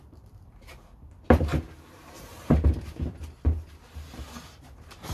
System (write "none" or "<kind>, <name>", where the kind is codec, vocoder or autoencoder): none